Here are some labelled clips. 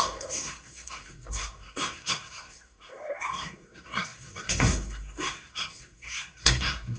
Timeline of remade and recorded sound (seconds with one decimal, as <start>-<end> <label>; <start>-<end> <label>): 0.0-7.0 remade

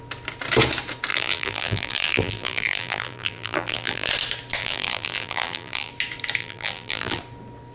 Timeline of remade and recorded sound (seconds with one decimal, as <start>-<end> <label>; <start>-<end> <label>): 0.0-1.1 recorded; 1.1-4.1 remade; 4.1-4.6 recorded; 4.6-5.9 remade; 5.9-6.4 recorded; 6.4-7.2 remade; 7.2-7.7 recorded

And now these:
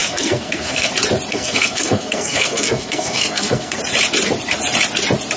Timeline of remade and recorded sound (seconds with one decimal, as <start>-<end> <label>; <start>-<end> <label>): 0.0-0.9 remade; 0.9-1.3 recorded; 1.3-3.8 remade; 3.8-5.4 recorded